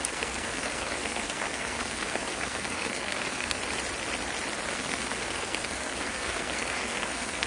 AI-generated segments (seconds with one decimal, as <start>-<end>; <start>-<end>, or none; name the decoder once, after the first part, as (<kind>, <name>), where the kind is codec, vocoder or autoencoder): 0.0-3.6 (codec, SNAC); 4.7-7.5